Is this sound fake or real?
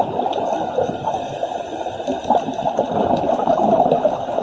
real